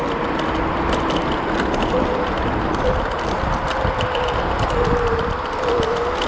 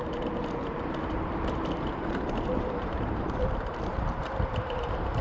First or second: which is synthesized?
second